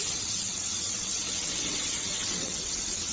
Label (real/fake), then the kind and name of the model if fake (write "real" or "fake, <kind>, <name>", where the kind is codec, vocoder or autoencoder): fake, vocoder, WaveNeXt